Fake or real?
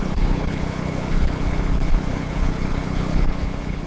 fake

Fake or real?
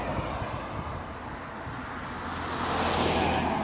real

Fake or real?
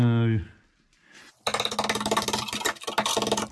real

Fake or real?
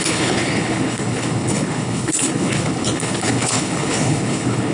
fake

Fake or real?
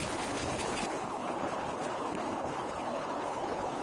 fake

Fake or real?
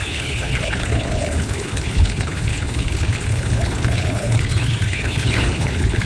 fake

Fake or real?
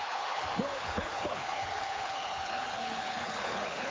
fake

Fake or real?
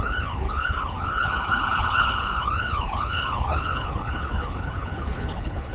fake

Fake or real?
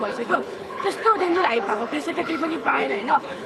fake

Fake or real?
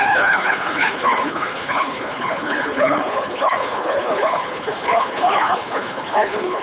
fake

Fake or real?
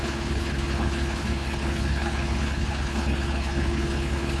fake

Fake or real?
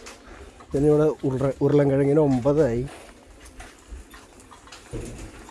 real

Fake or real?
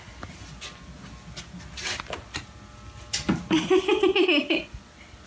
real